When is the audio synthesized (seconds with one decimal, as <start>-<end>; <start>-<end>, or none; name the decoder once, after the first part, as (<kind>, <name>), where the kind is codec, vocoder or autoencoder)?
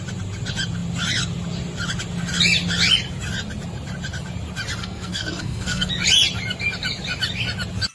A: 4.8-5.9 (codec, SNAC)